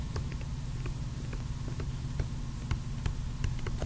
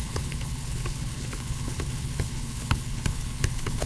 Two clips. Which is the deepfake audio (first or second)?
second